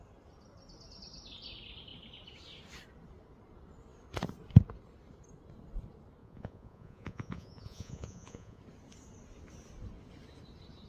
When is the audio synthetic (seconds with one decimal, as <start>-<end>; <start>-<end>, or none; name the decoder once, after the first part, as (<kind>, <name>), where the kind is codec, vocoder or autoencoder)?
6.2-8.6 (vocoder, Vocos)